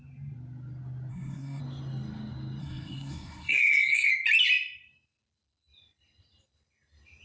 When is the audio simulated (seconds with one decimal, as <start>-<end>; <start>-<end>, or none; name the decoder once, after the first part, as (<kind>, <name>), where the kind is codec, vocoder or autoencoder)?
1.1-1.6 (codec, SNAC); 2.6-4.1